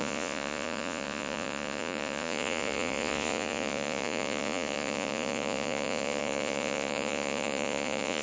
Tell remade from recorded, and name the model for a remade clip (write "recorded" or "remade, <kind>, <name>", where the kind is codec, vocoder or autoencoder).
remade, vocoder, Vocos